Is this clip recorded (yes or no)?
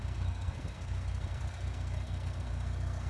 no